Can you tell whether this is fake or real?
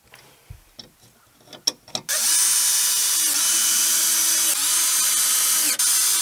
real